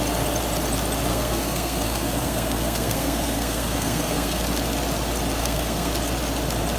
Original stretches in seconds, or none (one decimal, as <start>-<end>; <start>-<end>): 0.0-1.1; 4.4-5.4; 5.9-6.8